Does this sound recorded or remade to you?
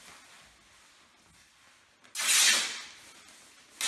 recorded